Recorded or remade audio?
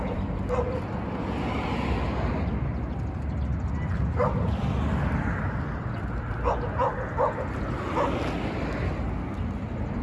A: recorded